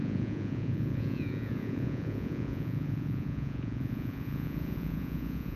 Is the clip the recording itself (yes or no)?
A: no